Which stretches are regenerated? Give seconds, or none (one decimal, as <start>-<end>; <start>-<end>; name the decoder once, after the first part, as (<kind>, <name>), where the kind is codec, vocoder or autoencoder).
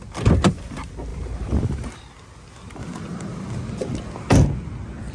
1.1-2.0 (vocoder, BigVGAN v2)